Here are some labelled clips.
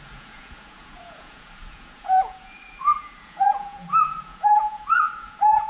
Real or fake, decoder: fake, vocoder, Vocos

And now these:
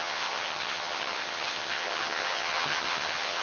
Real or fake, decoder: fake, vocoder, HiFi-GAN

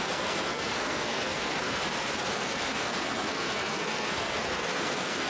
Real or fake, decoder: fake, codec, SNAC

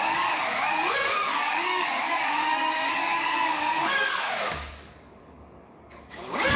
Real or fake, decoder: fake, codec, DAC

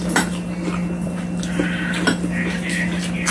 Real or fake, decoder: real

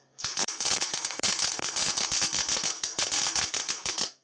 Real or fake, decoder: fake, codec, SNAC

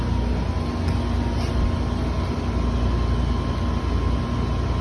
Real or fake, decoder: real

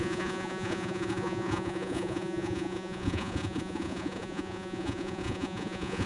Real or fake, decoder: fake, vocoder, Vocos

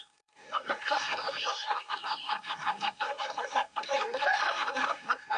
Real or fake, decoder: fake, codec, SNAC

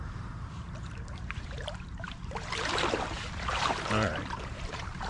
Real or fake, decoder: fake, vocoder, BigVGAN v2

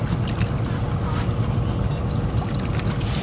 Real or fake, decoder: real